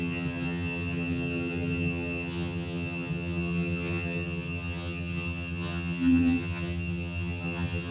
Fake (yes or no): yes